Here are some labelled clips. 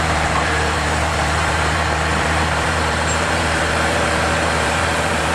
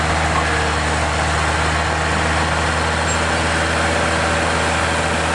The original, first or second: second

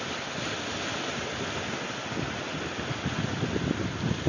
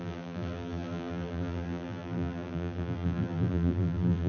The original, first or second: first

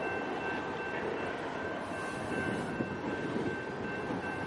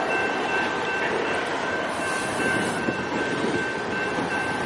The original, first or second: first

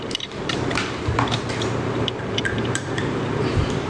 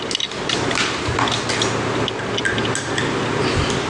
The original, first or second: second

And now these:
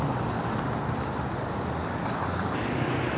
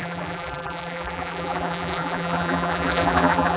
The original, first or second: first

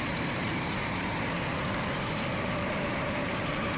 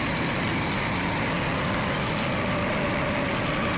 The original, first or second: second